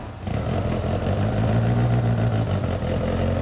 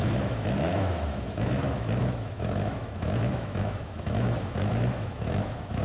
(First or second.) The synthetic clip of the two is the second